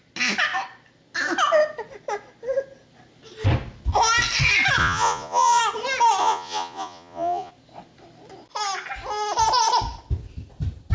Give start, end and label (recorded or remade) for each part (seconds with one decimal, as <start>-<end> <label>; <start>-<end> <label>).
0.0-4.8 recorded; 4.8-5.6 remade; 5.6-6.2 recorded; 6.2-7.5 remade; 7.5-10.9 recorded